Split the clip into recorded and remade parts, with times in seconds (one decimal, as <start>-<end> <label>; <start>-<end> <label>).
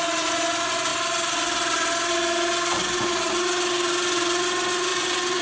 0.0-4.9 recorded; 4.9-5.4 remade